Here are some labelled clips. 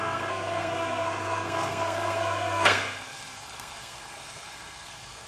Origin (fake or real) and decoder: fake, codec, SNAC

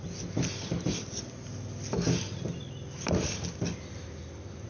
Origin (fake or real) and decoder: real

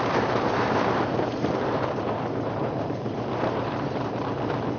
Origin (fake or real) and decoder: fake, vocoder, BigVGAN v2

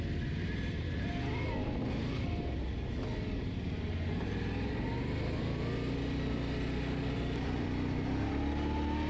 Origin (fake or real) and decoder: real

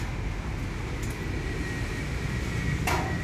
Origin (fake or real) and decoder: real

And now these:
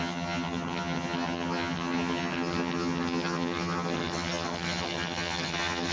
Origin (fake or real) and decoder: fake, vocoder, HiFi-GAN